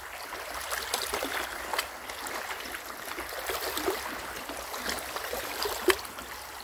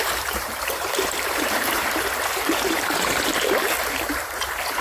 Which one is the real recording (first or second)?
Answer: first